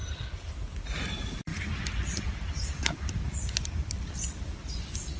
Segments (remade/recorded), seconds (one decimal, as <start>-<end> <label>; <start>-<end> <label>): 0.0-0.8 recorded; 0.8-5.2 remade